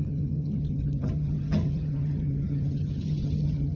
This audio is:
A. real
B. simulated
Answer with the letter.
B